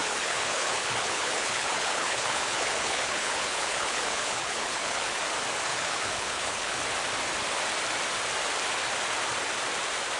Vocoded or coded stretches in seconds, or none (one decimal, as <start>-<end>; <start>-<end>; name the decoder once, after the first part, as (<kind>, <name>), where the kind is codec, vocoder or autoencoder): 0.0-5.2 (codec, HILCodec); 5.7-6.8